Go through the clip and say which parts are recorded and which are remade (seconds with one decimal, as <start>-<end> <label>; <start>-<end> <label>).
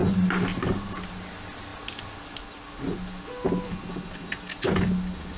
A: 0.0-5.4 recorded